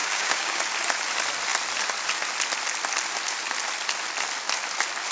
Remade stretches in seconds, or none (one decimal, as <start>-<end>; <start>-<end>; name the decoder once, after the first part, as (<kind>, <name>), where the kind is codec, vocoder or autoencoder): 0.0-0.6 (codec, DAC)